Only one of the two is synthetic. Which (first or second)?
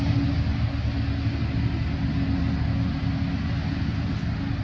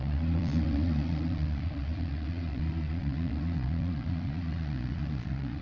second